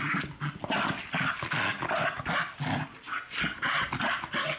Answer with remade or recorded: recorded